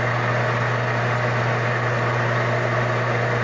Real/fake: real